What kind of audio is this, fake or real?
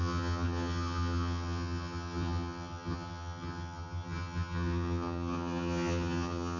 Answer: fake